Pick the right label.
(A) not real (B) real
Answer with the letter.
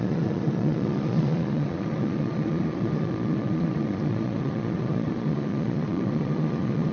A